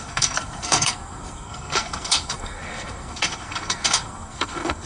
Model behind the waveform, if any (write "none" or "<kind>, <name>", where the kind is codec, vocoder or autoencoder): codec, SNAC